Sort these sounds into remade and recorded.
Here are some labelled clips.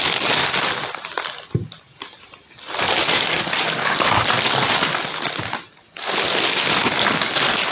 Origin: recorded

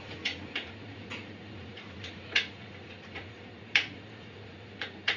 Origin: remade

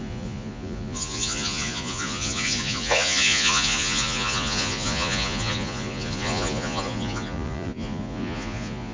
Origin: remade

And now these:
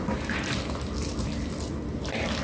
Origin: recorded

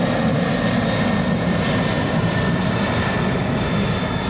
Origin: recorded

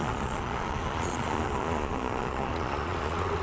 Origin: remade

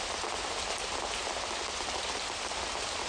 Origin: recorded